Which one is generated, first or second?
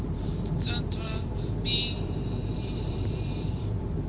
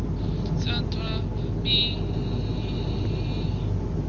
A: first